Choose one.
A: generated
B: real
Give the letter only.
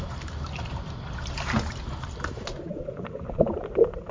A